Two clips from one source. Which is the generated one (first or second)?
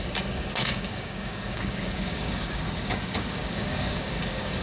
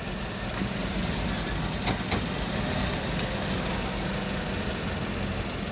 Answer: first